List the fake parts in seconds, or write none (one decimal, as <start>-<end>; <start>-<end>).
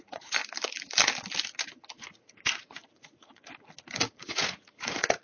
0.0-0.4; 2.1-3.5; 4.1-5.2